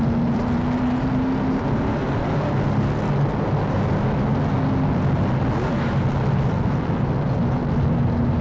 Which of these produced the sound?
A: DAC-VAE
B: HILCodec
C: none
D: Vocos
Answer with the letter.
C